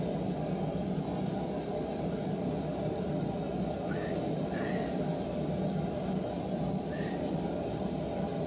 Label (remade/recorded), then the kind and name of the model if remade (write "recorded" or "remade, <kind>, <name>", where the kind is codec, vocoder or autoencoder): recorded